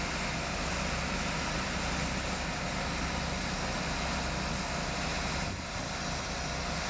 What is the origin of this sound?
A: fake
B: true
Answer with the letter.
B